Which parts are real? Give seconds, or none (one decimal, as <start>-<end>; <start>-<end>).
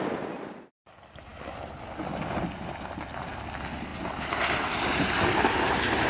0.0-1.3; 3.3-6.1